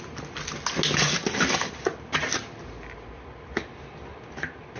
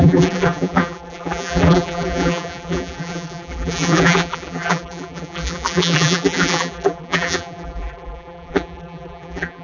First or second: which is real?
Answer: first